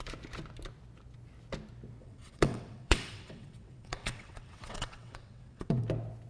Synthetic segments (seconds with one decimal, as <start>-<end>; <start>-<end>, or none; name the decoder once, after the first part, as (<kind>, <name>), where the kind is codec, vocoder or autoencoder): 2.0-5.8 (vocoder, WaveNeXt)